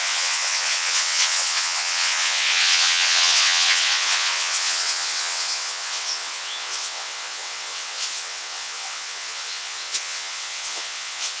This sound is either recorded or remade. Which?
remade